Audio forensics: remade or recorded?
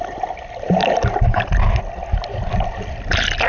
recorded